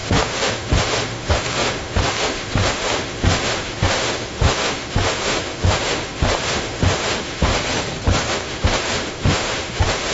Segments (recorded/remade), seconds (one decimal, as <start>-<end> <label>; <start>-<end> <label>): 0.0-7.5 remade; 7.5-8.3 recorded; 8.3-10.1 remade